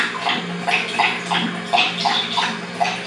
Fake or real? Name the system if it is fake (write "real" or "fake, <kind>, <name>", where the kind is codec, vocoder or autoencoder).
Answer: real